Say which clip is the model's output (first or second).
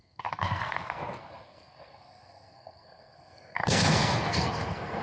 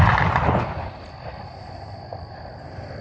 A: first